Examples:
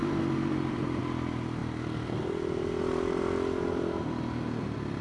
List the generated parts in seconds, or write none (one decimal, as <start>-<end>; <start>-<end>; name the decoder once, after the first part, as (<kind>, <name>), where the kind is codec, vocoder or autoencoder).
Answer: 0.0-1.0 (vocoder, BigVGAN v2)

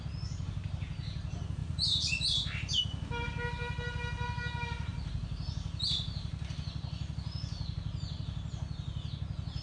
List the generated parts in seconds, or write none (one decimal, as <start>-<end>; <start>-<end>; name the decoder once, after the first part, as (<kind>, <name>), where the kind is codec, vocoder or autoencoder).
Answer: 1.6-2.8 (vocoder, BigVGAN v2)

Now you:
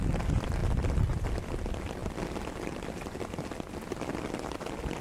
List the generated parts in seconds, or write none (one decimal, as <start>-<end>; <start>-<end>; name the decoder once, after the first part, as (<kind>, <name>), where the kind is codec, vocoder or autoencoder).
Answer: 0.6-1.5 (vocoder, BigVGAN v2); 2.0-4.2

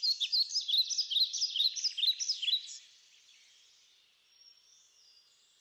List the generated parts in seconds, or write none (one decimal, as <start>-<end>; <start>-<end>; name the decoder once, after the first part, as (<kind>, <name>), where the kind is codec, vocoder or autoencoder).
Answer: 1.3-1.8 (vocoder, BigVGAN v2)